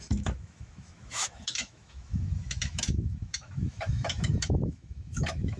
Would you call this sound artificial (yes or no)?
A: yes